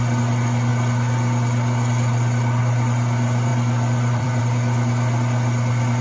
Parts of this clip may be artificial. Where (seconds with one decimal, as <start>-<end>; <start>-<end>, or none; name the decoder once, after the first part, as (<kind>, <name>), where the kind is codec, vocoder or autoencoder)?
3.5-4.4 (vocoder, BigVGAN v2)